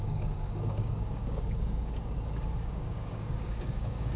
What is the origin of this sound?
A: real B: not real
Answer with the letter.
B